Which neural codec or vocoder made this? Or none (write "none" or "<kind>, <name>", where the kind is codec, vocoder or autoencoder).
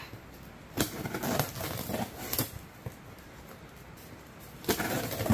none